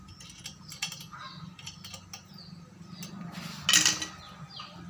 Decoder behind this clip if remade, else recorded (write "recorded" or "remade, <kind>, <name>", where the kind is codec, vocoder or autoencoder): recorded